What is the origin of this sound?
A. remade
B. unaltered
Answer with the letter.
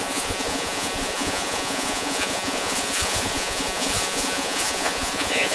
A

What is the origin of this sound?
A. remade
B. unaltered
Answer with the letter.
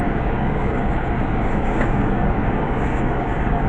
A